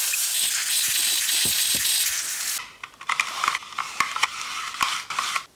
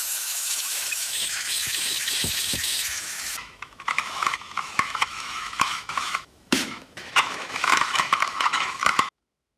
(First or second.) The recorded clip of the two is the first